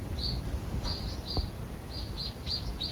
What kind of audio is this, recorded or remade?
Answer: recorded